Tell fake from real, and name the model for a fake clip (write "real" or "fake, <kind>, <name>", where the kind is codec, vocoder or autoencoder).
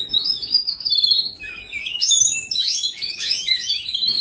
fake, autoencoder, DAC-VAE